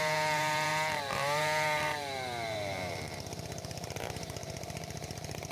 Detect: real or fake fake